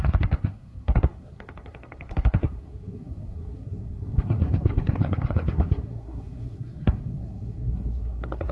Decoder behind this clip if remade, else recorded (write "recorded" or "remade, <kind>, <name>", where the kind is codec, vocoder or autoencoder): remade, codec, SNAC